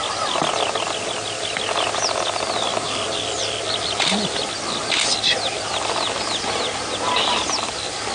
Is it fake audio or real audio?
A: real